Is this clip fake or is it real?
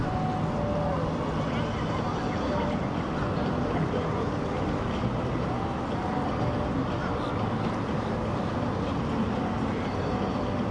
real